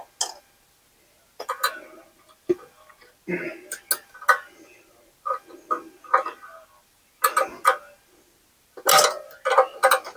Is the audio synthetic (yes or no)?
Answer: no